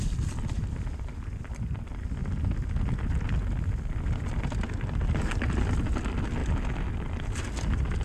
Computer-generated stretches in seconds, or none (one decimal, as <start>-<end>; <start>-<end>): none